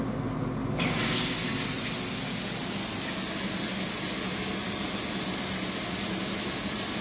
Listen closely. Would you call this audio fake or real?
real